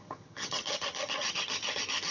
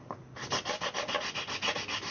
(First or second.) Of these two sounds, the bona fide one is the second